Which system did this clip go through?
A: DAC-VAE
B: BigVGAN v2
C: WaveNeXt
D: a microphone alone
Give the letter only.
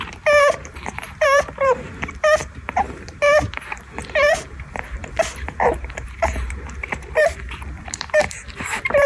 B